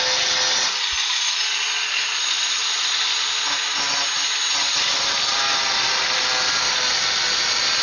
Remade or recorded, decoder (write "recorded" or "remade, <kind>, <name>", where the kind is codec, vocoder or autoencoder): recorded